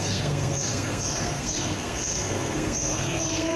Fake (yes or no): yes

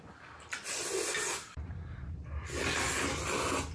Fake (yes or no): no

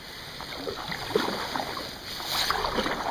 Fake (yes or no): no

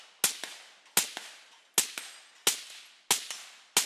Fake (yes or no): no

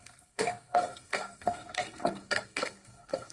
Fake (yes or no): yes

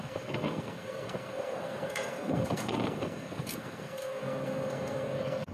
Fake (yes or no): yes